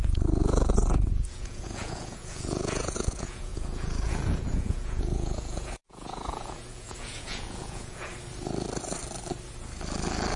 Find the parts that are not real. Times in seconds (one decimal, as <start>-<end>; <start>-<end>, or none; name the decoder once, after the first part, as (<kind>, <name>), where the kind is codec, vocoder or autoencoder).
0.0-8.1 (vocoder, Vocos)